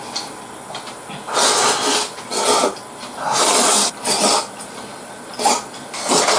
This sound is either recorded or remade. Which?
recorded